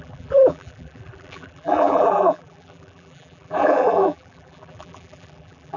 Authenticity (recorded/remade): remade